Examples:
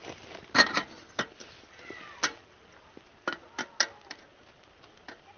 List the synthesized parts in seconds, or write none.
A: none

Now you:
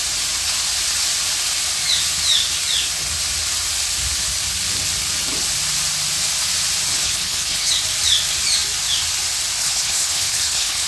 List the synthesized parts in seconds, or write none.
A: 6.9-7.7 (codec, HILCodec); 9.6-10.9

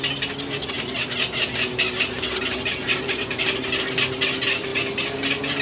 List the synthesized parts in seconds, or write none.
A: none

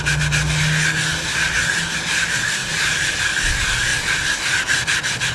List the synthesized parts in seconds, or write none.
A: 2.6-3.2 (vocoder, BigVGAN v2); 3.9-5.3

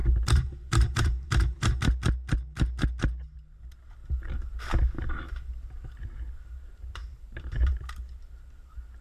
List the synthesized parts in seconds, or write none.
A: 0.0-1.7 (vocoder, BigVGAN v2); 7.0-8.0

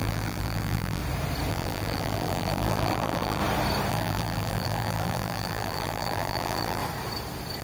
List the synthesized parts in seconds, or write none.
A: 0.0-1.0 (vocoder, BigVGAN v2); 1.5-3.4; 3.9-6.8